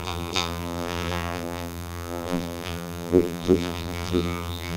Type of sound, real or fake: fake